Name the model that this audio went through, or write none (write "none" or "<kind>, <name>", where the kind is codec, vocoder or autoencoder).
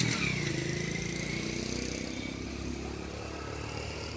none